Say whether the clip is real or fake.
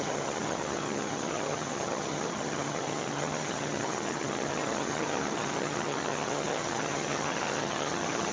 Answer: fake